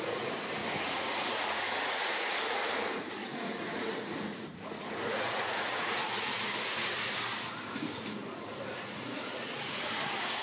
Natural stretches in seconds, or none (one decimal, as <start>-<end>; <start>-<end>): none